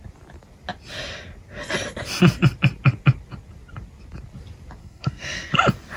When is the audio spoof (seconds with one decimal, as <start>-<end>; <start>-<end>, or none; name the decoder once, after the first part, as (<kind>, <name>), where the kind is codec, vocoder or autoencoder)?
4.8-5.5 (codec, SNAC)